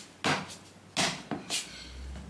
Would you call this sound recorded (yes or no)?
yes